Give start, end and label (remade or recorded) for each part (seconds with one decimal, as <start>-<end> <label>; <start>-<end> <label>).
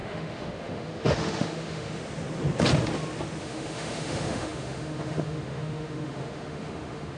0.0-2.0 remade; 2.0-3.4 recorded; 3.4-7.2 remade